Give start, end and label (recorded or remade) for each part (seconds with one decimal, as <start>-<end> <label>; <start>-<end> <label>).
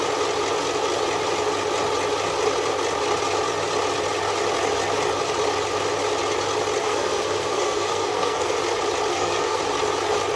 0.0-6.8 recorded; 6.8-8.6 remade; 8.6-9.1 recorded; 9.1-9.6 remade; 9.6-10.4 recorded